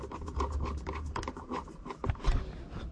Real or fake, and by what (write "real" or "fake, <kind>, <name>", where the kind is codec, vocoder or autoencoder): fake, vocoder, BigVGAN v2